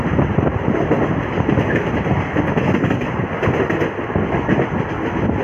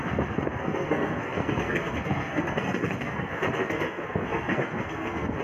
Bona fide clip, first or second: first